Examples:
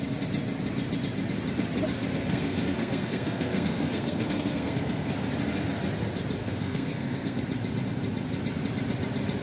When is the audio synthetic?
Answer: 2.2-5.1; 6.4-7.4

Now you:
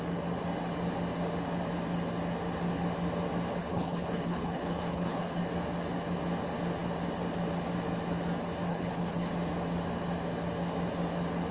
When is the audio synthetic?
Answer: 3.6-5.4; 8.7-9.3

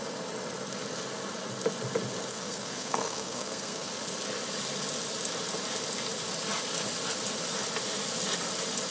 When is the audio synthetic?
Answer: 2.3-3.9

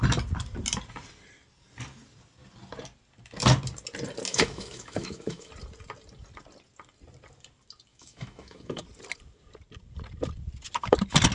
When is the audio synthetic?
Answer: 4.3-5.5; 7.9-8.8

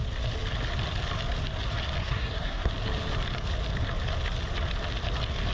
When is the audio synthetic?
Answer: 2.0-2.7

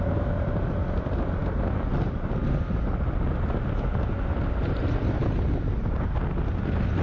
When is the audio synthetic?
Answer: none